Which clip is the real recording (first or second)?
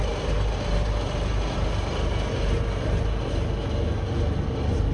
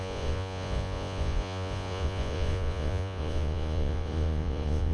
first